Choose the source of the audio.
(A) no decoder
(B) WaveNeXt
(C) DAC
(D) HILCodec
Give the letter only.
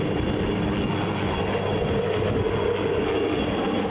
A